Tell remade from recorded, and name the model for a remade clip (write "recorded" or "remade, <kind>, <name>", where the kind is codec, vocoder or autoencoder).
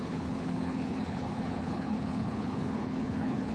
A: remade, codec, HILCodec